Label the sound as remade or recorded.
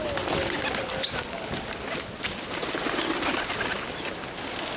recorded